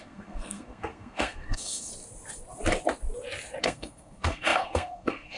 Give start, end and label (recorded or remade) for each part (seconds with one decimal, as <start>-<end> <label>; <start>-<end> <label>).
0.0-1.9 remade; 1.9-3.6 recorded; 3.6-5.4 remade